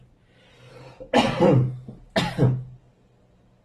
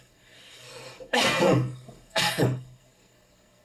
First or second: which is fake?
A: second